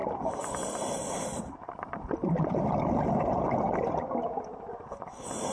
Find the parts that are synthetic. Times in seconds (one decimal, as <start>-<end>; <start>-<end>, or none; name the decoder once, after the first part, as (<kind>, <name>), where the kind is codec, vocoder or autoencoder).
none